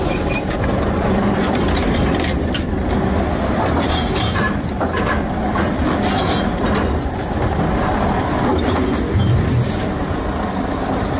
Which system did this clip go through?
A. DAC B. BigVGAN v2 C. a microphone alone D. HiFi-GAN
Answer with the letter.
C